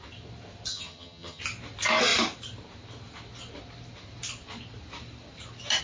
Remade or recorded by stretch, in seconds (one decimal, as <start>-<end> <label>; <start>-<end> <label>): 0.0-0.7 recorded; 0.7-1.4 remade; 1.4-5.8 recorded